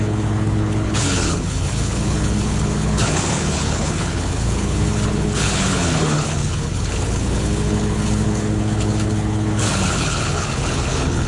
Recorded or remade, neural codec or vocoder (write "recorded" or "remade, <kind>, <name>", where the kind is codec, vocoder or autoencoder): remade, codec, HILCodec